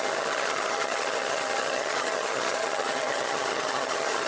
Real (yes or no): no